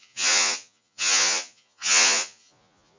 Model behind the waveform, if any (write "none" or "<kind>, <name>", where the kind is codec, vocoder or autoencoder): vocoder, Vocos